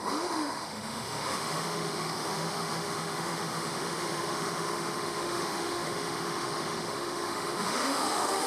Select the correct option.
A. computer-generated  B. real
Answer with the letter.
A